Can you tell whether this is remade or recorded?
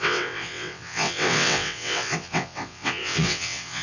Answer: remade